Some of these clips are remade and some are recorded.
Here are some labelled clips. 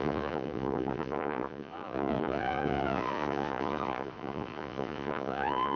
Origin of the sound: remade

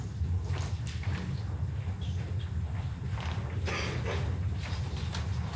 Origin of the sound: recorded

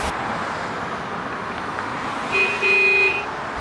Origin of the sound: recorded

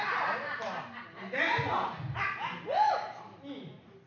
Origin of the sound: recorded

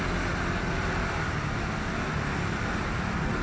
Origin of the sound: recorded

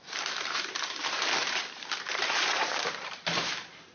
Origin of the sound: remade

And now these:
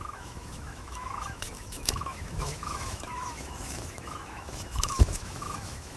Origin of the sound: remade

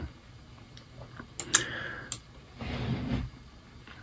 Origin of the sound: recorded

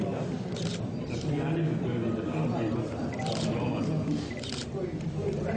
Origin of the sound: recorded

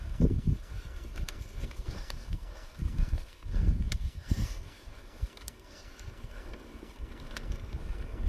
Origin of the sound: remade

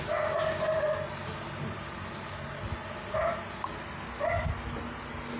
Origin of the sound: recorded